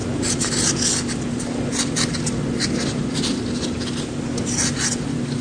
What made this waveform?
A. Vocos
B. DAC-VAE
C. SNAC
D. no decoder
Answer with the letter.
D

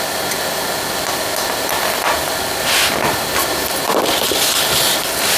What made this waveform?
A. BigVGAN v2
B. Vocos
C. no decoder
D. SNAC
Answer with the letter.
C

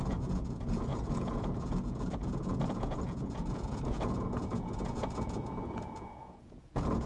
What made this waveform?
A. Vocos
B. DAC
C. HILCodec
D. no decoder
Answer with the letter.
A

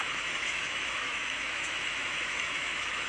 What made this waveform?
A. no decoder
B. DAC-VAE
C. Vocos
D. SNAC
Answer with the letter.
B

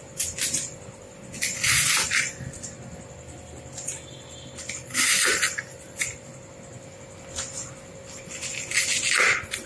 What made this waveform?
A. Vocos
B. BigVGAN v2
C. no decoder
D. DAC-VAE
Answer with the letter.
C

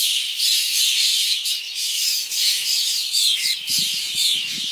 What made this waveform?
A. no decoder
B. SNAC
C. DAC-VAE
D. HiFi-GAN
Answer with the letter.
C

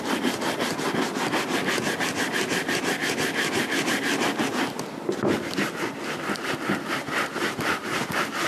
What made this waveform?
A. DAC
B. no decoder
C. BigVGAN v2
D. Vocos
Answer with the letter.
B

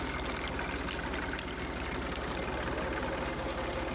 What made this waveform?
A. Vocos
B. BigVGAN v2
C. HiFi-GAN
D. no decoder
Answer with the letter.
D